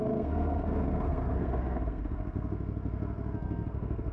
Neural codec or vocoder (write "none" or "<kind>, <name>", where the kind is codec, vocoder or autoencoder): codec, SNAC